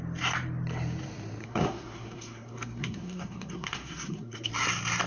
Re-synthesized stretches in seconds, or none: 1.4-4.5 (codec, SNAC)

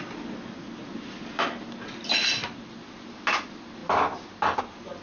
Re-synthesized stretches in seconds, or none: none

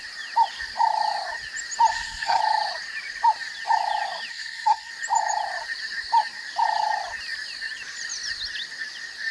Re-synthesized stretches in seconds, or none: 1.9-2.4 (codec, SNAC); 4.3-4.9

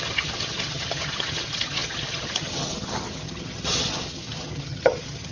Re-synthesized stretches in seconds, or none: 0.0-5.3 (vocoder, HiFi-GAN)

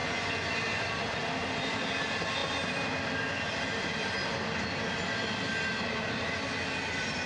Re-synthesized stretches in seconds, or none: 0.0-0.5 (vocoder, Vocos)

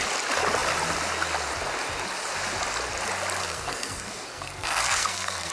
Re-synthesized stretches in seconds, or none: 3.4-5.5 (codec, SNAC)

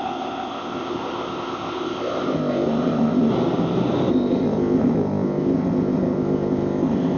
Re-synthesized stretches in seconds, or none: 0.0-3.3 (codec, ZipCodec); 4.1-7.2